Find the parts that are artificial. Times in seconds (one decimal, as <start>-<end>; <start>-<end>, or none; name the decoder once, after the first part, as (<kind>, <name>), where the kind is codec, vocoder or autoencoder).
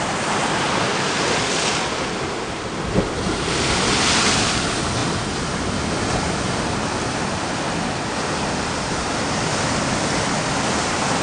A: none